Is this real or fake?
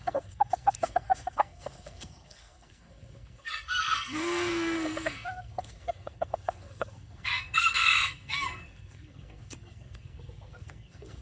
fake